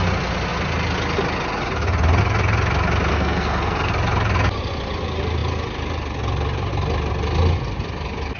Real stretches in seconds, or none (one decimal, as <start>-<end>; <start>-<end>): 0.0-3.1; 3.9-8.4